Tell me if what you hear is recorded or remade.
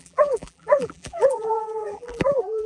remade